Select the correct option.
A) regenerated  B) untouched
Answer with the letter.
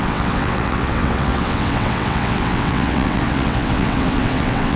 A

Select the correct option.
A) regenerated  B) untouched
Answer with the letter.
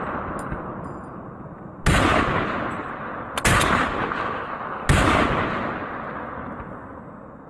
B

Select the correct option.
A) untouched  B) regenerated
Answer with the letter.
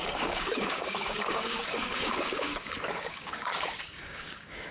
B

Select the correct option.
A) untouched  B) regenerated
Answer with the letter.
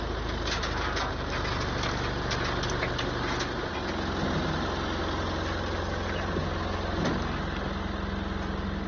A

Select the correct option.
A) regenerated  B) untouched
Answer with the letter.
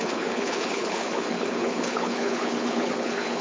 A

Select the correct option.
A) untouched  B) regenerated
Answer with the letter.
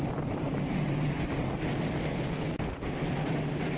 A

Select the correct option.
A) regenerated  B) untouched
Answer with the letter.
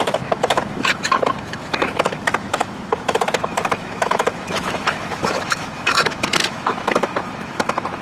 A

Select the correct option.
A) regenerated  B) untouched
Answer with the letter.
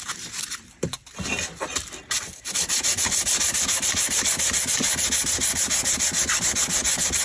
B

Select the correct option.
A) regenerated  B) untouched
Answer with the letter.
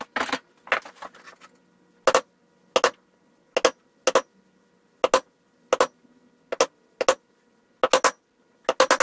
B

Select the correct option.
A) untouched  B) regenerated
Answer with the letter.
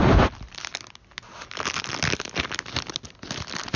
A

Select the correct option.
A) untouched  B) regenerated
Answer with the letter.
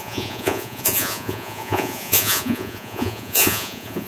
B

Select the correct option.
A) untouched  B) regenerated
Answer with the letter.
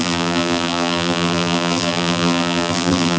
B